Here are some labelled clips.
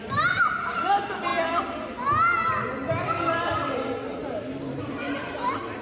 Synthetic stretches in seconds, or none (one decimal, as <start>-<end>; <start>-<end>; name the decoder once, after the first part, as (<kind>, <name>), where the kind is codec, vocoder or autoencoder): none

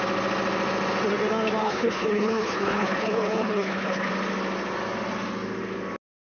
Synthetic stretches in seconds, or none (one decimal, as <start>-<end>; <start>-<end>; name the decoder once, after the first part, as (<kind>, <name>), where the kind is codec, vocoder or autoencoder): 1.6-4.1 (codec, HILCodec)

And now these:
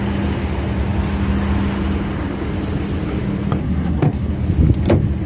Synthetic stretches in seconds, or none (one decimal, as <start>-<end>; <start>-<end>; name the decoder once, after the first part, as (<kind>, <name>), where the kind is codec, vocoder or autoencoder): 3.6-4.3 (codec, SNAC)

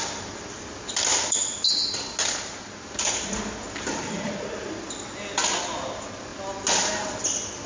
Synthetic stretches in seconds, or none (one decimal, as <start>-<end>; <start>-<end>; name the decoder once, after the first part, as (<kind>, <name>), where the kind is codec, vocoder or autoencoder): none

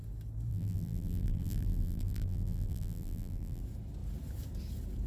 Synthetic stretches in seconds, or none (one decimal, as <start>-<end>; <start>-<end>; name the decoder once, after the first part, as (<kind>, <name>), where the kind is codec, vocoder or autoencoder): 0.5-3.6 (vocoder, BigVGAN v2)